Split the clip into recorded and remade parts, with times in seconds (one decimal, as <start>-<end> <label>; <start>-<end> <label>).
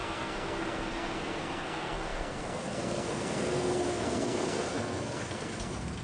0.0-6.0 remade